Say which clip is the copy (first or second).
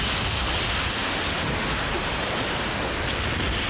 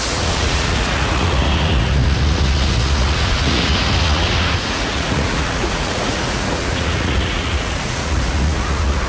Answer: second